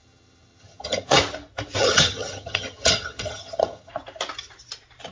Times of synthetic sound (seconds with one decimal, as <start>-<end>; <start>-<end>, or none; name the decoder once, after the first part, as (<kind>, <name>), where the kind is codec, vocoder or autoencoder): 0.0-1.2 (vocoder, HiFi-GAN); 1.8-3.9